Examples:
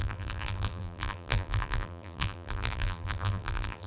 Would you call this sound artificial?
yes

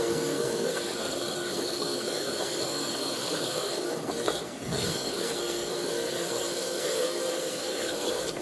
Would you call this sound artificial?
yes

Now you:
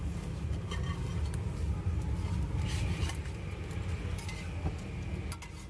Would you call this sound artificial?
no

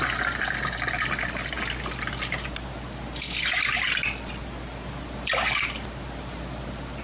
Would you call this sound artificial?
no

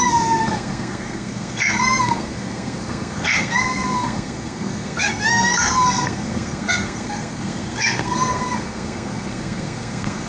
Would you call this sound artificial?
yes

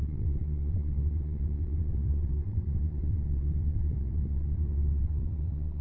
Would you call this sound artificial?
yes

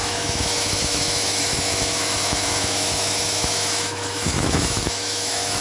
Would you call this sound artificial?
yes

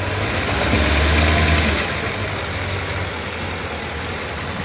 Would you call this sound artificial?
no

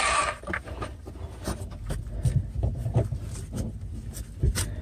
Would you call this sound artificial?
no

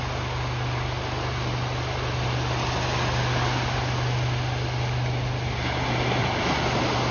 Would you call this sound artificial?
no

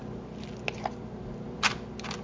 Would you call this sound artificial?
no